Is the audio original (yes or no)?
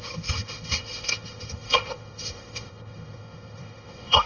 no